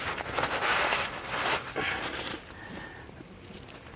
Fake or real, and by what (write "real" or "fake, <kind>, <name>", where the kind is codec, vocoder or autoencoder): real